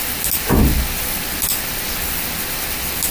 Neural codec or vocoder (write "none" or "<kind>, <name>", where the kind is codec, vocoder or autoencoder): none